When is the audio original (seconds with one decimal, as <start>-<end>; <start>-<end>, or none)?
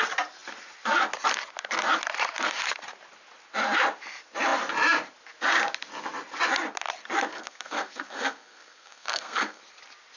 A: 0.0-7.3; 9.6-10.2